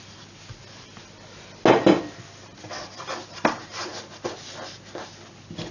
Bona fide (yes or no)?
yes